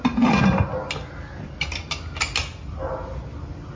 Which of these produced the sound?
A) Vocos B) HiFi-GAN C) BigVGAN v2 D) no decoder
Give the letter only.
D